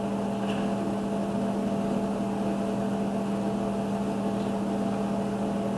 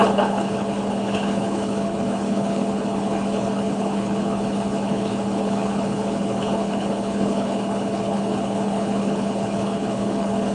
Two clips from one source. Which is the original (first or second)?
first